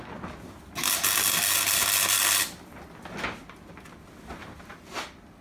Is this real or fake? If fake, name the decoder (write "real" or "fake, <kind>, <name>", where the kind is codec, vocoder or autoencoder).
real